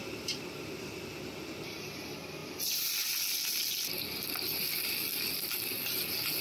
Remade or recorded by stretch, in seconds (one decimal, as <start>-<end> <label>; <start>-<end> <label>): 0.0-6.4 recorded